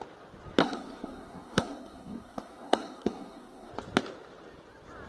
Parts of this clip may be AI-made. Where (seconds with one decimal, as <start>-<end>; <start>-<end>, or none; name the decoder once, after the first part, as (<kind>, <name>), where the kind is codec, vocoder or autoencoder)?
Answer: 0.6-3.7 (codec, SNAC)